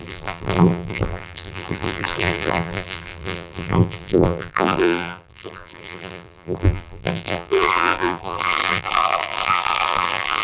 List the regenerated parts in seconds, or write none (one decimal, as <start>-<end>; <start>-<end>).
0.0-10.4